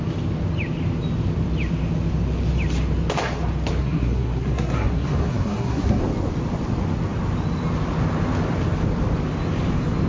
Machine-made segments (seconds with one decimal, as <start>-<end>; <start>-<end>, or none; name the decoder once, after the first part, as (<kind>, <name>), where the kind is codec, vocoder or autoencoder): 3.8-6.0 (codec, SNAC)